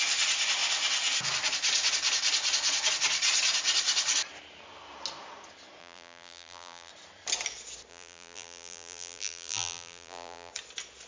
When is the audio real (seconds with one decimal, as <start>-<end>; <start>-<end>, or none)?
0.0-5.8; 6.9-7.9; 10.5-11.1